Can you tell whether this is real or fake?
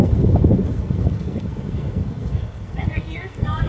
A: fake